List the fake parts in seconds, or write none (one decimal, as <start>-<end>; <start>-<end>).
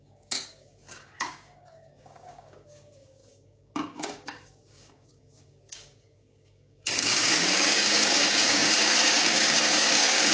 0.0-10.3